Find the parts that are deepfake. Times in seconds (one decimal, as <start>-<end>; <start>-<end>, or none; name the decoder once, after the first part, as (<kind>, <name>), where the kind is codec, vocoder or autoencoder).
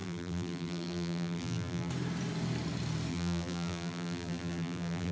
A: 0.0-1.9 (vocoder, BigVGAN v2); 3.1-5.1